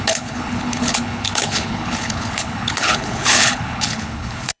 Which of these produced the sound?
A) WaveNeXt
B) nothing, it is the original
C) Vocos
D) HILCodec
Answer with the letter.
D